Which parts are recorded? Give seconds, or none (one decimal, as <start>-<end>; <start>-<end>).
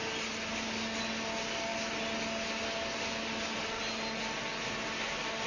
0.0-5.5